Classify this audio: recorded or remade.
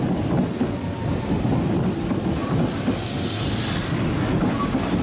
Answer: recorded